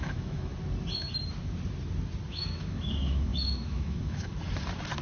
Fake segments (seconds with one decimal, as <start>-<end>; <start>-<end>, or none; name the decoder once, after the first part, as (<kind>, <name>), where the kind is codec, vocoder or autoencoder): 0.0-0.5 (autoencoder, DAC-VAE); 2.3-4.3